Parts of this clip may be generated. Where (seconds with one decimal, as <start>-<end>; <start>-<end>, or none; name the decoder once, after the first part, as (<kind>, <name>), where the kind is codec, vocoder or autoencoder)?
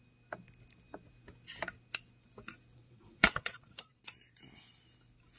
2.7-4.0 (vocoder, Vocos)